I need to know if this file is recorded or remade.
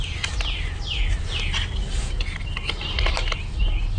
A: recorded